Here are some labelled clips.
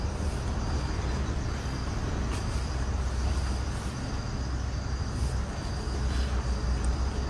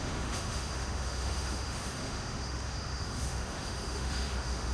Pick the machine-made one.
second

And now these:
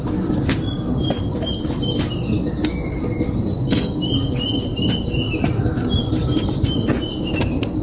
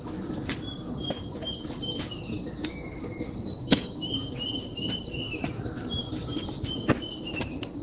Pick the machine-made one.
second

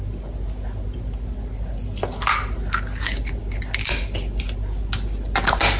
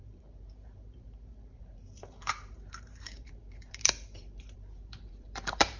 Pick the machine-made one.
second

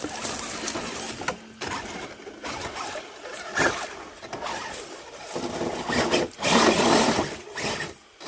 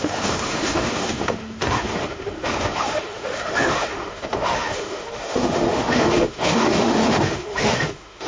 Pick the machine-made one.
second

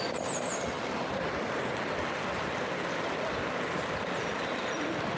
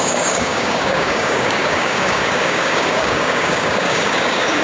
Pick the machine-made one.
second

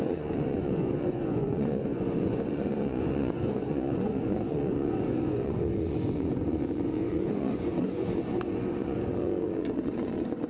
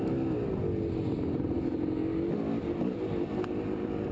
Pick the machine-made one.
first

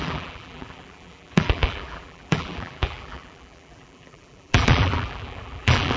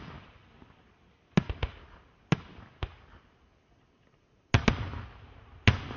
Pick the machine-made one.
first